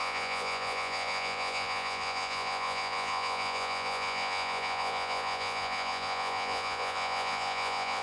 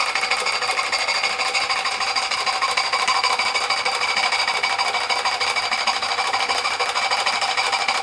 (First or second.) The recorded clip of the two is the second